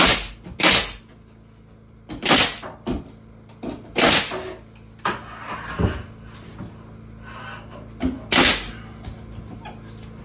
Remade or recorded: recorded